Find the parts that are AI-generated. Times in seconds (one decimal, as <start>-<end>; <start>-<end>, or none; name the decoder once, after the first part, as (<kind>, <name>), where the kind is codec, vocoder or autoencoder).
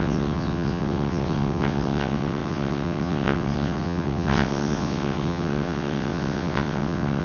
0.0-7.2 (vocoder, WaveNeXt)